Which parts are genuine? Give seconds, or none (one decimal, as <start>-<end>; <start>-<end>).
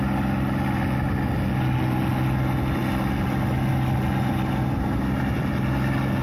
0.0-6.2